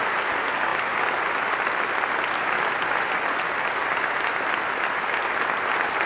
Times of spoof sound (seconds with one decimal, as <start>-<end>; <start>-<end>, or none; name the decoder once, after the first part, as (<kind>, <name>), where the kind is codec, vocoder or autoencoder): none